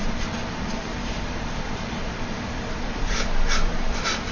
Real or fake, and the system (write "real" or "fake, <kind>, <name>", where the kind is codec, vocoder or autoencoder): fake, vocoder, BigVGAN v2